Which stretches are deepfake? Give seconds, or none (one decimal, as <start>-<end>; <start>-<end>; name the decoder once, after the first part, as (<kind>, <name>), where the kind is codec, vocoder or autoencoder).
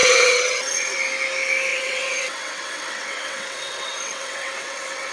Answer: 0.0-1.0 (vocoder, WaveNeXt); 1.7-5.1